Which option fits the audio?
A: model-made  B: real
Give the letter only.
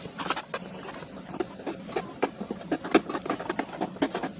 B